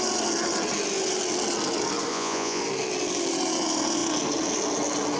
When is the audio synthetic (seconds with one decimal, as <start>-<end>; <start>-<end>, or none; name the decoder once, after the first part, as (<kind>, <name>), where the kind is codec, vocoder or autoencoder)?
2.1-2.6 (vocoder, Vocos)